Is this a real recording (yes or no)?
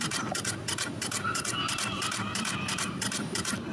no